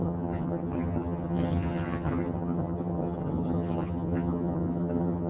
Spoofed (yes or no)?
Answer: yes